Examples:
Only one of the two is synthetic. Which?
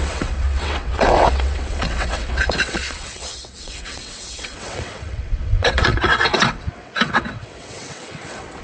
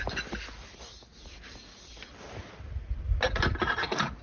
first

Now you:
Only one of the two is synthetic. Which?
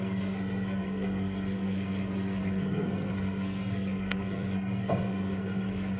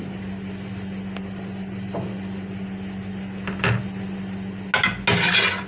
first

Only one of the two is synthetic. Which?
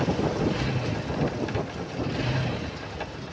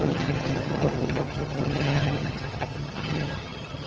second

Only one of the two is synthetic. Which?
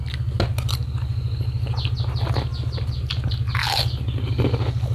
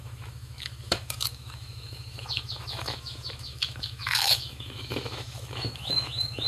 second